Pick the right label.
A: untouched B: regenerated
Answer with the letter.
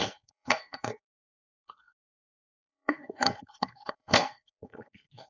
B